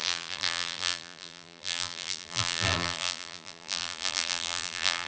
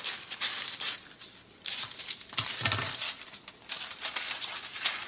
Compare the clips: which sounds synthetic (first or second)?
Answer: first